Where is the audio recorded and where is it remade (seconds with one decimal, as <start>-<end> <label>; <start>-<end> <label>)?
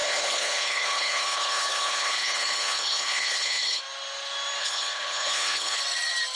0.0-3.8 remade; 3.8-4.6 recorded; 4.6-5.8 remade; 5.8-6.4 recorded